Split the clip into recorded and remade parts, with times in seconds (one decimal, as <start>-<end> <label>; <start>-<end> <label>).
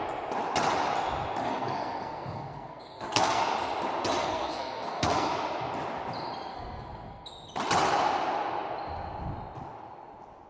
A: 0.0-1.4 recorded; 1.4-3.4 remade; 3.4-4.2 recorded; 4.2-5.3 remade; 5.3-6.5 recorded; 6.5-7.3 remade; 7.3-10.5 recorded